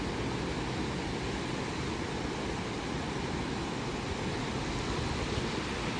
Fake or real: real